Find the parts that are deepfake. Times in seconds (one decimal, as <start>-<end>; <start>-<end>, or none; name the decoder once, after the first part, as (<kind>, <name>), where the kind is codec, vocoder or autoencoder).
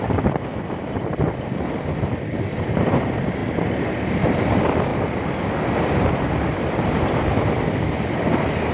0.0-3.4 (vocoder, BigVGAN v2); 4.1-4.9; 5.5-8.7